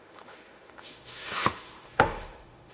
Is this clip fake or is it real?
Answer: fake